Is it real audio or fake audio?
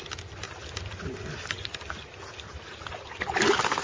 real